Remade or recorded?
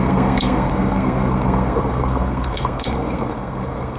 remade